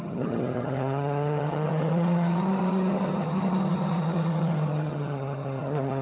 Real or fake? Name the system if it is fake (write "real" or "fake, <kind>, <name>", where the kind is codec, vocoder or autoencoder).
fake, vocoder, HiFi-GAN